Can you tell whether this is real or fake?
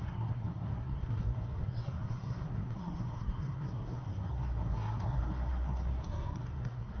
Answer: fake